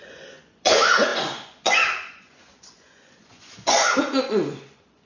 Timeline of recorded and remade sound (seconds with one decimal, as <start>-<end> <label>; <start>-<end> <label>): 0.0-5.1 remade